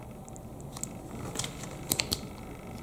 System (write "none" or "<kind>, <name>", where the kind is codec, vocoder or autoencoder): none